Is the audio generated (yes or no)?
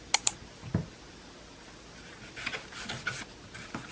no